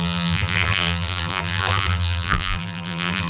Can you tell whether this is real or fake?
fake